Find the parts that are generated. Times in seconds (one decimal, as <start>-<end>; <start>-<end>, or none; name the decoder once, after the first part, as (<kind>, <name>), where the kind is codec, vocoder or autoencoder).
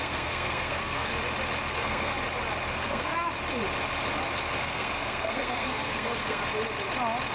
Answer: 0.0-1.1 (codec, SNAC); 1.7-2.1; 2.7-3.1; 4.6-6.4